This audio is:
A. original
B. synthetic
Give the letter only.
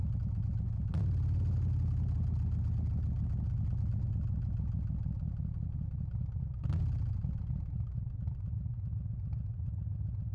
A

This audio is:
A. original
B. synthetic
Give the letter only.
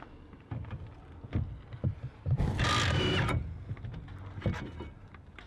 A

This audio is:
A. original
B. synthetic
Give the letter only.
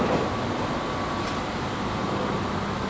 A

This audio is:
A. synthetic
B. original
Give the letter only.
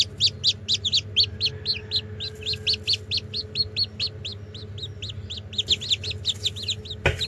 B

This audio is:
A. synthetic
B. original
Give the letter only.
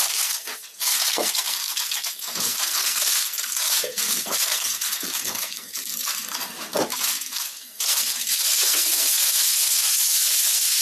A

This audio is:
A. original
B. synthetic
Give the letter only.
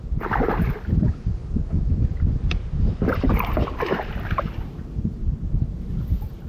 A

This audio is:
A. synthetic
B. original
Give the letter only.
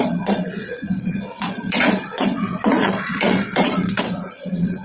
A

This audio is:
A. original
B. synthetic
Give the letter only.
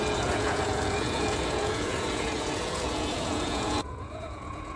B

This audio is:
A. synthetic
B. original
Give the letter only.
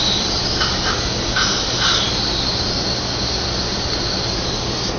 B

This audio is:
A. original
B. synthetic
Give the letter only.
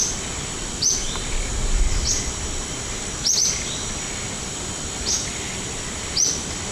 A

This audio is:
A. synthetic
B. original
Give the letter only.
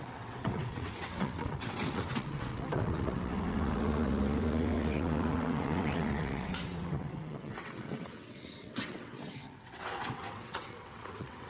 A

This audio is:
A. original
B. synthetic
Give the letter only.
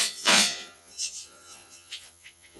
B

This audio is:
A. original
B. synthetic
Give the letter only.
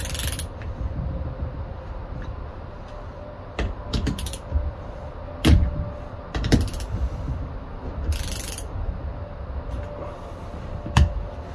A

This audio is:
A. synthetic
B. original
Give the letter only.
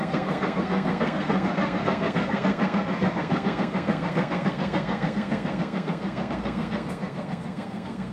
A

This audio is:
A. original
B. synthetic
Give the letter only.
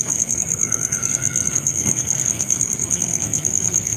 B